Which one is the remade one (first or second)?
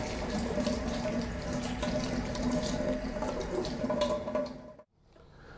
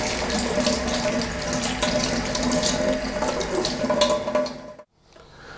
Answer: first